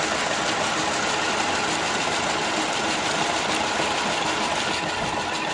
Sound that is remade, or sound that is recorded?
recorded